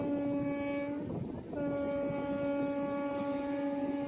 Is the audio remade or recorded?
recorded